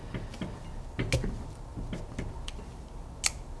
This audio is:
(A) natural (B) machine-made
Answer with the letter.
A